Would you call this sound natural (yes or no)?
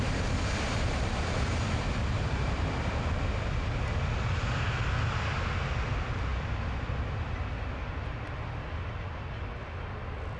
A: yes